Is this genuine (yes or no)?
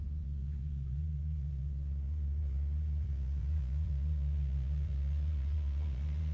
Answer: no